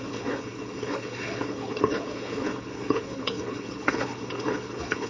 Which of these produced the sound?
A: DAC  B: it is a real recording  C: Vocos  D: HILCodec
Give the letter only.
D